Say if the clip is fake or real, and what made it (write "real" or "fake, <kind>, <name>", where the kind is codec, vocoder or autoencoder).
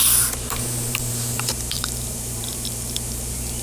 fake, vocoder, BigVGAN v2